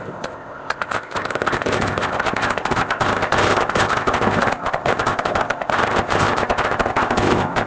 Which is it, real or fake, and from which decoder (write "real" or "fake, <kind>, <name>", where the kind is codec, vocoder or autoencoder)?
fake, codec, ZipCodec